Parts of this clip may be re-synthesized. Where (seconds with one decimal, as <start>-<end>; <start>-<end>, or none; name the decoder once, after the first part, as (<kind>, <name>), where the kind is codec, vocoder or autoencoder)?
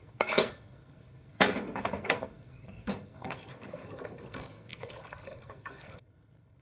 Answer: 0.0-6.6 (codec, SNAC)